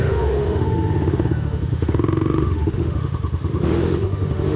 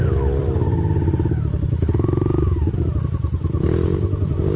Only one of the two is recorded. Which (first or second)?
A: second